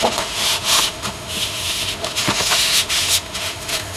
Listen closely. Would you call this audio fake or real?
fake